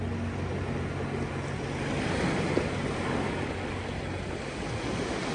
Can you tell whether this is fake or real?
real